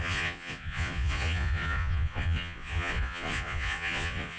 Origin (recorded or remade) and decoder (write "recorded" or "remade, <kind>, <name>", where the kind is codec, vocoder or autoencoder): remade, vocoder, Vocos